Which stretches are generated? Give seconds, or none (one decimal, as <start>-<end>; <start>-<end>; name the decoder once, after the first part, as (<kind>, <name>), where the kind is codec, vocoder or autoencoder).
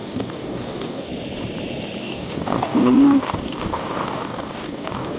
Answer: 0.0-1.1 (codec, DAC); 2.0-5.2